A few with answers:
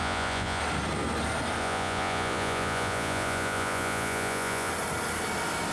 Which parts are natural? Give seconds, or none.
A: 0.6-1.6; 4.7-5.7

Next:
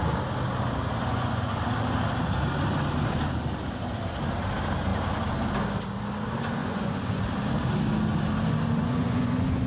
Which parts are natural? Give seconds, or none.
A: 0.0-1.0; 1.6-6.6; 7.2-8.8

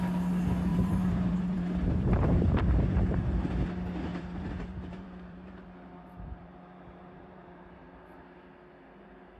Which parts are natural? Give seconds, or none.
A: 0.0-0.7; 3.5-4.1; 8.2-9.4

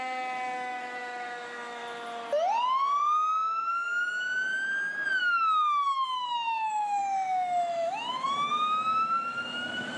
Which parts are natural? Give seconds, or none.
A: 1.8-5.2

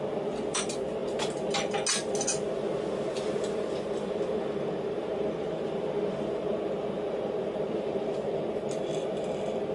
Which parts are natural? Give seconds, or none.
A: 0.0-9.7

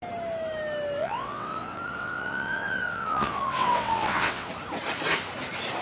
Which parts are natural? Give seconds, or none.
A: 0.0-1.0; 4.5-5.8